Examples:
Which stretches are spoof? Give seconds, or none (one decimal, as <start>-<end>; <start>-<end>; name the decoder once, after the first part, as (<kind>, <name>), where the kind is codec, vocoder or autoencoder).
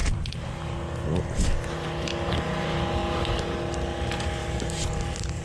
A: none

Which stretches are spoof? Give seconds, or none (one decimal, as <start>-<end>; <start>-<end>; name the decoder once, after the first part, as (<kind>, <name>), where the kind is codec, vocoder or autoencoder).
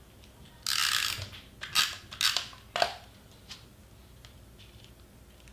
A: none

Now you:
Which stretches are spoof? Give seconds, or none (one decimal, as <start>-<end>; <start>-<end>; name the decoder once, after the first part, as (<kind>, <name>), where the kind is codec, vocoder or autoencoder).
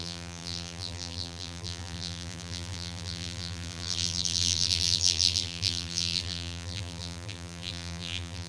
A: 0.0-8.5 (vocoder, BigVGAN v2)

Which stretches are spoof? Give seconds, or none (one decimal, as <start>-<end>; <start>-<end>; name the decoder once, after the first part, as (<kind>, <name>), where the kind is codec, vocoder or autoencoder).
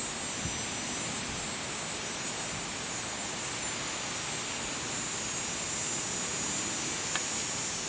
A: none